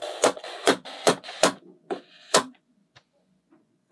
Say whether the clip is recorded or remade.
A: remade